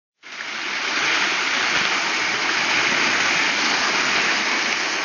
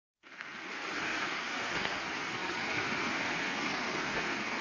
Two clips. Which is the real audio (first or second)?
first